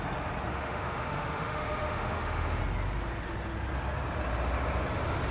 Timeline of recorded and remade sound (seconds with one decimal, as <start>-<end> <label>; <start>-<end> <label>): 0.0-0.5 recorded; 0.5-2.6 remade; 2.6-5.3 recorded